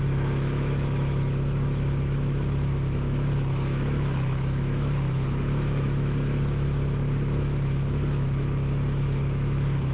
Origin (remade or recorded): remade